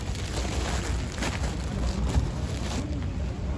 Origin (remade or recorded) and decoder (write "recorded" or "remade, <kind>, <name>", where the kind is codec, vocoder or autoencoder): recorded